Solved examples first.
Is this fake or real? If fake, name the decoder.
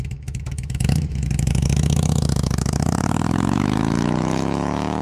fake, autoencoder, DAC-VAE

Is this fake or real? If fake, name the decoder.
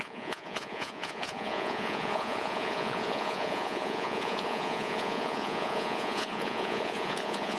fake, vocoder, Vocos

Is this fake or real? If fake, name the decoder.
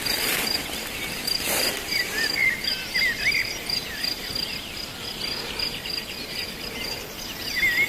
real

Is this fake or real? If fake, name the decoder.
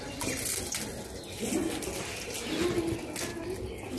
real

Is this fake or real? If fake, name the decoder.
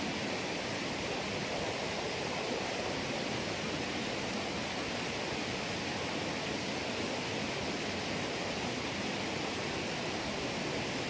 real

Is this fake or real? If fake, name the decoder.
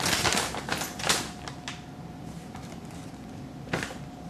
real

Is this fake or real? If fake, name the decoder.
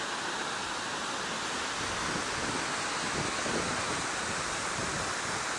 real